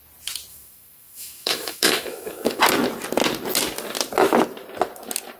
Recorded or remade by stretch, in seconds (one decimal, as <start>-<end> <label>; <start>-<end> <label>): 0.0-0.5 recorded; 0.5-2.6 remade; 2.6-5.4 recorded